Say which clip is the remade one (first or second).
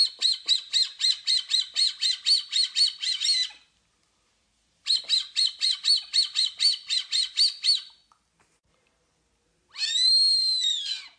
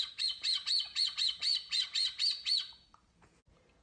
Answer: second